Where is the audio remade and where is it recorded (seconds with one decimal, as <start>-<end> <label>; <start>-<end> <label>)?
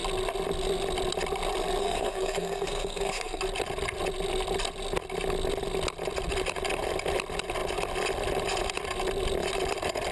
0.0-1.8 recorded; 1.8-3.4 remade; 3.4-10.1 recorded